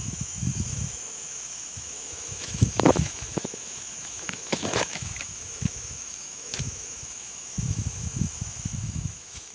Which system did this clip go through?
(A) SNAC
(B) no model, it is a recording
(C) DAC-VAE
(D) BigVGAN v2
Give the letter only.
C